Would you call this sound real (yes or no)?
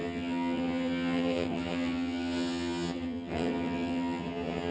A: no